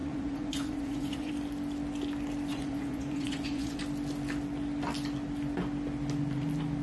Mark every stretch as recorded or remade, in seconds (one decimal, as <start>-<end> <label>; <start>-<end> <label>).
0.0-1.3 remade; 1.3-2.5 recorded; 2.5-3.8 remade; 3.8-6.8 recorded